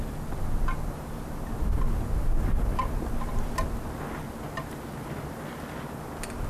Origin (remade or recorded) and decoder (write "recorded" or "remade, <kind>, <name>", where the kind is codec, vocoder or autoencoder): recorded